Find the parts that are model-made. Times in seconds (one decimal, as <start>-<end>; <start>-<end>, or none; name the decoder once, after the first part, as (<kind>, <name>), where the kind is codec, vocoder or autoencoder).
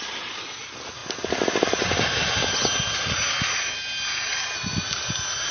none